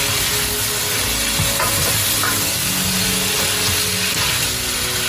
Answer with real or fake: real